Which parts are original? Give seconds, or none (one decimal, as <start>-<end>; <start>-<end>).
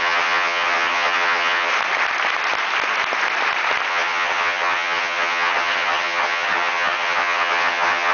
1.7-3.9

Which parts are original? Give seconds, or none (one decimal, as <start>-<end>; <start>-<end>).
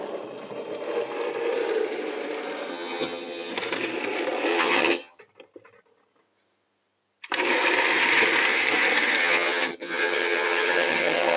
0.0-2.7; 3.5-4.5; 5.2-9.2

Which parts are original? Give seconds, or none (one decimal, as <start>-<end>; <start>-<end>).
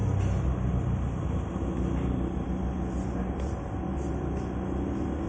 0.0-5.3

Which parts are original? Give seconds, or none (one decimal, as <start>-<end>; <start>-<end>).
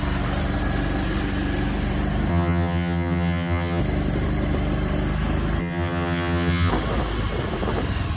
0.0-2.3; 3.8-5.6; 6.7-8.2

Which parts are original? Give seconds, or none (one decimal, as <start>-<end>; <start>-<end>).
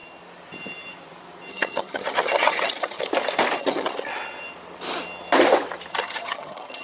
0.0-1.5; 3.1-3.6; 4.1-5.9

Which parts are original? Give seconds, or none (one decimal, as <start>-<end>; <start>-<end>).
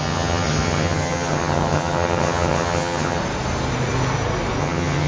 3.2-4.6